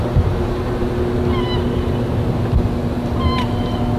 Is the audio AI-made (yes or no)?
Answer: no